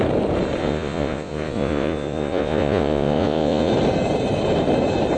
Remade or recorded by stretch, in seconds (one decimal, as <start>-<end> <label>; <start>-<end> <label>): 0.0-0.6 recorded; 0.6-3.7 remade; 3.7-5.2 recorded